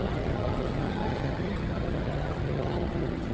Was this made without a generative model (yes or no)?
no